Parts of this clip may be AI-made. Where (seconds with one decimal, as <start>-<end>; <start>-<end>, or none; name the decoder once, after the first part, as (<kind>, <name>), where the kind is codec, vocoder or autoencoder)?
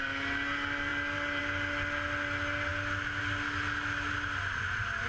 none